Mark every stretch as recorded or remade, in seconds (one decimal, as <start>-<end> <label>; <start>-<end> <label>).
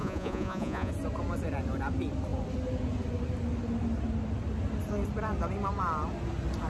0.0-0.9 remade; 0.9-6.7 recorded